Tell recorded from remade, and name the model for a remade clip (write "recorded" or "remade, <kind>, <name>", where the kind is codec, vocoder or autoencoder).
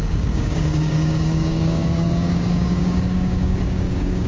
remade, codec, DAC